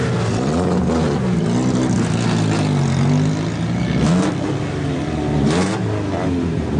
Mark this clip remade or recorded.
recorded